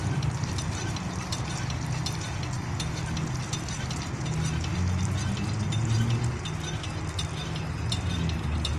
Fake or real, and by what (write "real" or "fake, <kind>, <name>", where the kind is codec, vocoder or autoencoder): real